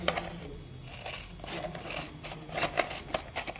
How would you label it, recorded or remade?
recorded